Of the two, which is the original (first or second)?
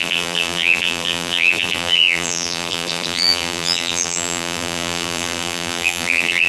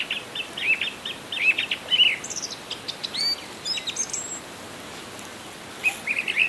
second